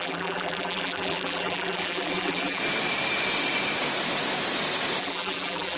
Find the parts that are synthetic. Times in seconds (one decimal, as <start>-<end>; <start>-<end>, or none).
0.0-2.6; 5.0-5.8